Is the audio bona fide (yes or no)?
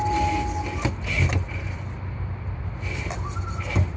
yes